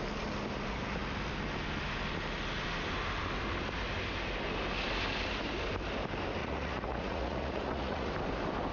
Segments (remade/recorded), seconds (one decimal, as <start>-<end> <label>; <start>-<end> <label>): 0.0-6.4 recorded; 6.4-8.1 remade; 8.1-8.7 recorded